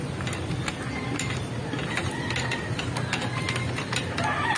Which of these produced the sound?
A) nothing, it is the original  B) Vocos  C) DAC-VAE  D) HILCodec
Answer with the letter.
A